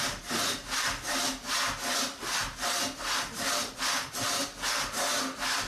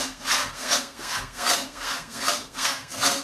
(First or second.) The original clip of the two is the first